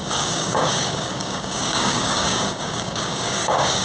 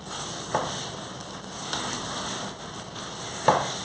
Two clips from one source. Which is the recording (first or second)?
second